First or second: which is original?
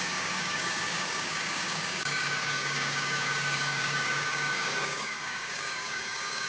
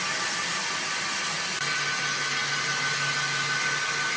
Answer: second